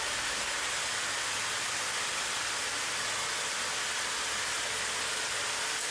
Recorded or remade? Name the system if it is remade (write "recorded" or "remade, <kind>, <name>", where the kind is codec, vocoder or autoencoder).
recorded